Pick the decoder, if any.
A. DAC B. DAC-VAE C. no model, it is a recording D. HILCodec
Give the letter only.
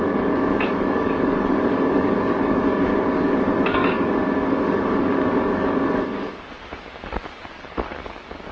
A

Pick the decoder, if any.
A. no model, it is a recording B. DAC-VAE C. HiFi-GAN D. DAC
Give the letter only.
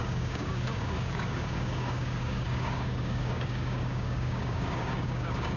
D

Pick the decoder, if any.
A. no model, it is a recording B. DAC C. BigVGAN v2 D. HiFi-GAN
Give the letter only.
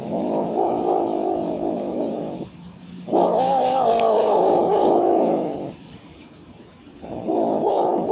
B